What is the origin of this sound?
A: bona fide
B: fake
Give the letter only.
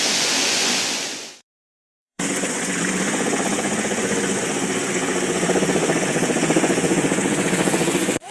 B